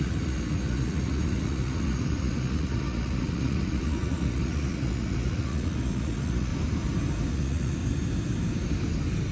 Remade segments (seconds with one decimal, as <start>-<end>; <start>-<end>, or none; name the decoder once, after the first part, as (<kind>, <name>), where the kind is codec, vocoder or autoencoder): 0.0-6.5 (vocoder, Vocos); 7.3-7.8